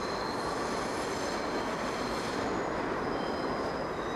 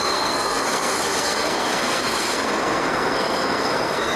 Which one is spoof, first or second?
second